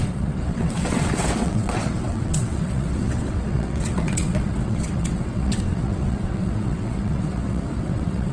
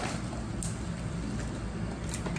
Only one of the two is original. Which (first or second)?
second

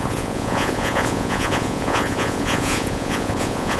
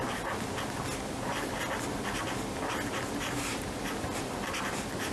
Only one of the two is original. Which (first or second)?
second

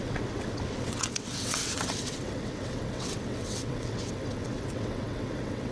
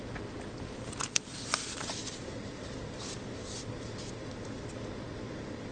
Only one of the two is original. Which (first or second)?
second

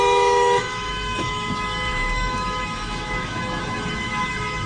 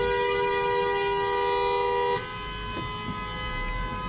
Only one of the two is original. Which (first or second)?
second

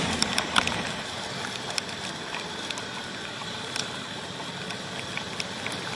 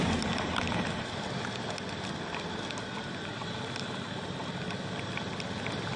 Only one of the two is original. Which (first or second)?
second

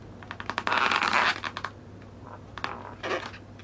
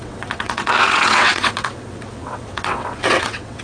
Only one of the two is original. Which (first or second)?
first